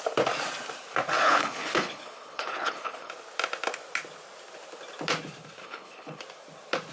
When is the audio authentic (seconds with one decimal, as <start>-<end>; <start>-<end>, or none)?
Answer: 0.0-1.2; 3.1-5.6; 6.2-6.9